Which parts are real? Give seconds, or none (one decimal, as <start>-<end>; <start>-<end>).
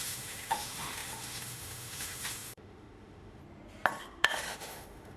3.4-4.0